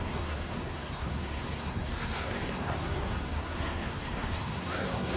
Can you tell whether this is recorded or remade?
remade